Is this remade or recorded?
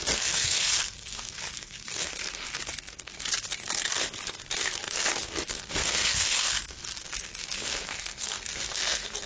remade